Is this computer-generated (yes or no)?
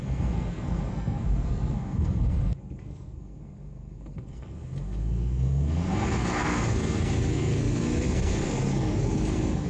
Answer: yes